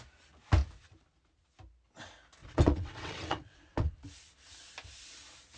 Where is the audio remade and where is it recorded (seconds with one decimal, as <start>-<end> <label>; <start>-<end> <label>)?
0.0-2.4 recorded; 2.4-3.9 remade; 3.9-5.6 recorded